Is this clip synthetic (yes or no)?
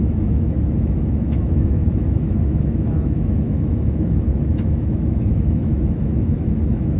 yes